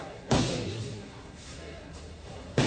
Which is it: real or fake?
fake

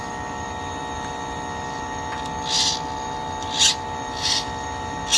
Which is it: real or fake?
real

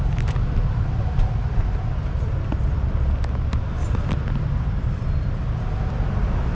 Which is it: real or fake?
real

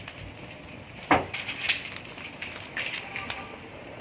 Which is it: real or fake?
real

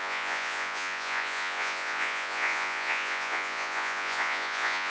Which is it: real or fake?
fake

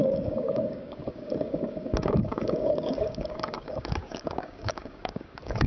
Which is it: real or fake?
fake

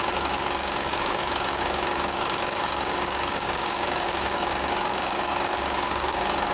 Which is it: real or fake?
fake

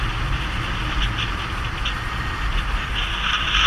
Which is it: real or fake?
real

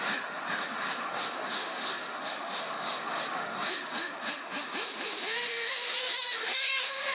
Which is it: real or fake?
fake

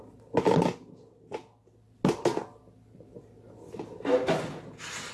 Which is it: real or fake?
real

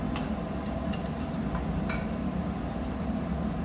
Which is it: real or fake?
real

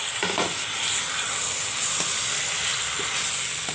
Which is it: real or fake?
real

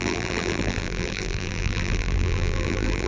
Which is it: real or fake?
fake